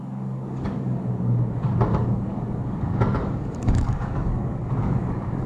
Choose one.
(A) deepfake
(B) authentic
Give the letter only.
A